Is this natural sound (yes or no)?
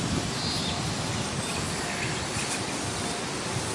yes